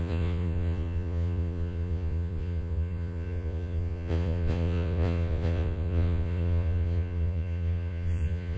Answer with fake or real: fake